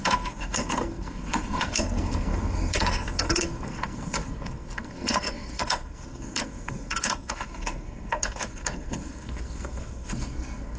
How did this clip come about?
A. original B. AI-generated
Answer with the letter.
B